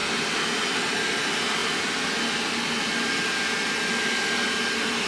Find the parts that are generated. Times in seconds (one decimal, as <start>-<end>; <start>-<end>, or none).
none